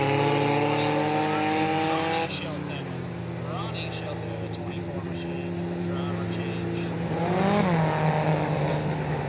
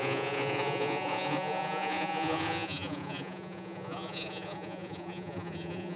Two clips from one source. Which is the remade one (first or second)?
second